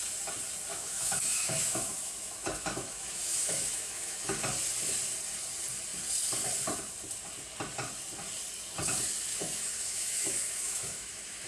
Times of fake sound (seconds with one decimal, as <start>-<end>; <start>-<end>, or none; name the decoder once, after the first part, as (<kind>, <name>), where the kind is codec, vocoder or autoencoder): 0.7-4.3 (autoencoder, DAC-VAE); 9.3-11.5